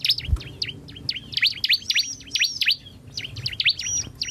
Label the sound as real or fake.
real